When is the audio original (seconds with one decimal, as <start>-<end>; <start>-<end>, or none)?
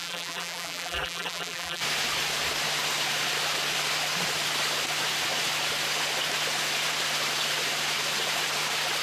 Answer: 1.8-9.0